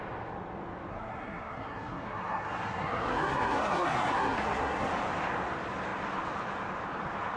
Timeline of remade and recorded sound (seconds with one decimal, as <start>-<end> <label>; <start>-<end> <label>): 0.0-0.9 recorded; 0.9-4.9 remade; 4.9-7.4 recorded